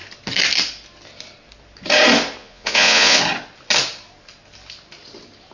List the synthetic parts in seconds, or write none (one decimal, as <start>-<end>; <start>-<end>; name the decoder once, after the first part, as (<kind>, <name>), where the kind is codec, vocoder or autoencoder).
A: 2.4-3.2 (vocoder, Vocos)